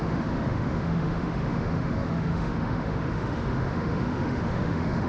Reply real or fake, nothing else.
fake